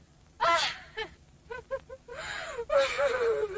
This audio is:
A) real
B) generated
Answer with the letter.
A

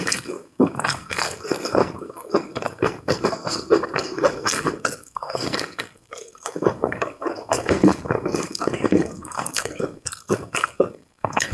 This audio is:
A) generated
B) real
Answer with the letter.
A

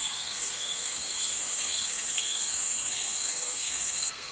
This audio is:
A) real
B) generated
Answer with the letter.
B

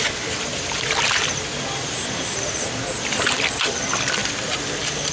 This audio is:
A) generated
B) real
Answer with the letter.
B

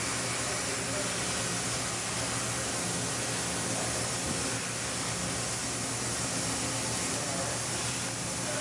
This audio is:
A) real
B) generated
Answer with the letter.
A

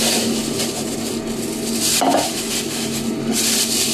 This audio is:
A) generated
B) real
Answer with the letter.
B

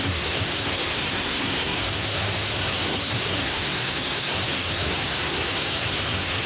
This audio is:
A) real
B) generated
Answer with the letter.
B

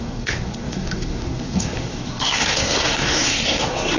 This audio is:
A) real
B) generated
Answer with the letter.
B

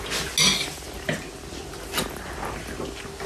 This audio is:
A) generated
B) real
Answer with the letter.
B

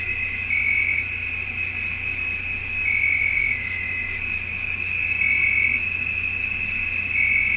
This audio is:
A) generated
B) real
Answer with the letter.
B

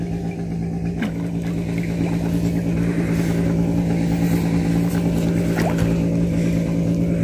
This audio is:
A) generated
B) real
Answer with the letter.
B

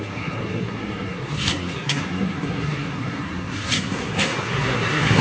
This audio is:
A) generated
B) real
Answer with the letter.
A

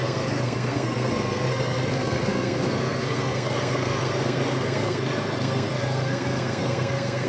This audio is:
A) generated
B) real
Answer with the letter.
A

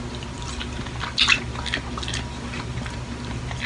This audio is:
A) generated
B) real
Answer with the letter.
B